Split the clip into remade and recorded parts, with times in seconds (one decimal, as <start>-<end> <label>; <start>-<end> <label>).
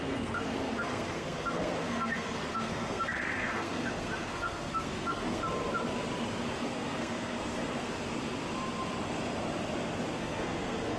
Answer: 0.0-5.4 remade; 5.4-6.6 recorded; 6.6-7.9 remade; 7.9-10.2 recorded; 10.2-11.0 remade